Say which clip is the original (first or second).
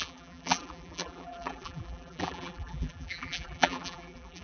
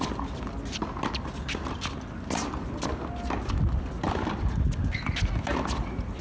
second